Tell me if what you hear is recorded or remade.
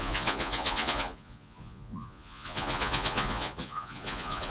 remade